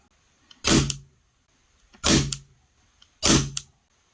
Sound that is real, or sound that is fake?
real